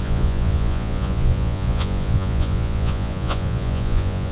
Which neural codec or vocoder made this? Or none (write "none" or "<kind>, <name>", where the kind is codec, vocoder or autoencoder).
vocoder, Vocos